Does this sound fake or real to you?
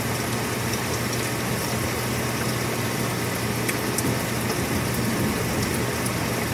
real